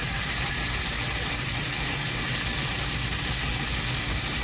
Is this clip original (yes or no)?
yes